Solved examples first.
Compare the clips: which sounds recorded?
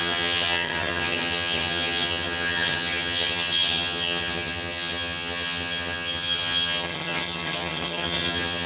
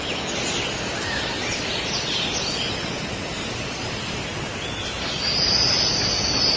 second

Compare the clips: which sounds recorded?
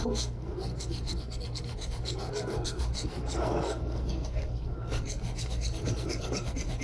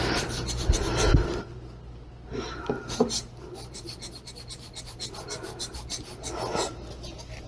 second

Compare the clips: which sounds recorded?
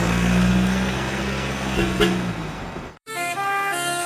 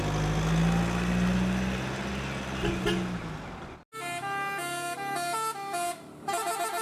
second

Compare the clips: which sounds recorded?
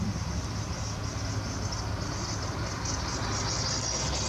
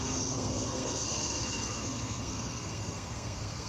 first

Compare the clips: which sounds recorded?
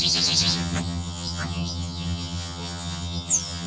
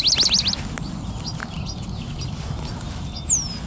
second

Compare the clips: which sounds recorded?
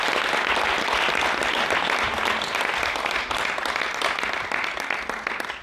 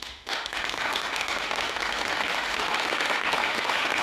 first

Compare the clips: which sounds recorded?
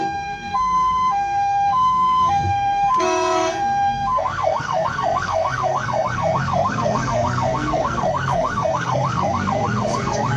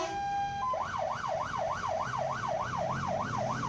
second